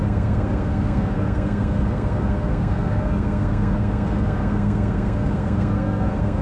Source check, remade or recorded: remade